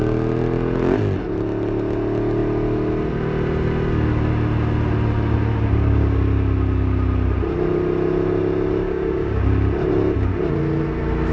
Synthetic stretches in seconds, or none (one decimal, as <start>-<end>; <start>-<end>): 5.5-6.2; 8.8-9.4